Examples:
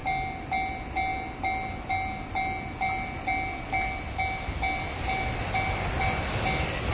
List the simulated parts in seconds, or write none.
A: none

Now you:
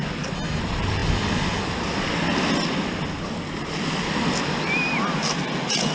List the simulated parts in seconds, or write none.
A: none

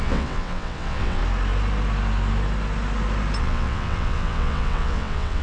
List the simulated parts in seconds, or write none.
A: 0.0-1.2 (vocoder, WaveNeXt); 3.4-5.4

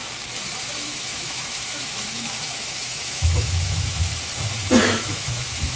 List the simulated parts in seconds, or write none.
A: 0.7-4.0 (autoencoder, DAC-VAE); 4.8-5.8

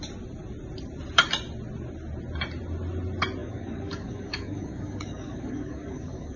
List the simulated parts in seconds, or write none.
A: 3.4-6.4 (codec, DAC)

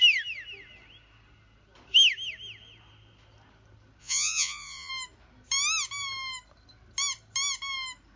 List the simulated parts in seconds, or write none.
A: 4.0-4.9 (vocoder, Vocos)